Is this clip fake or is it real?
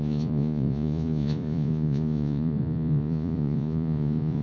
fake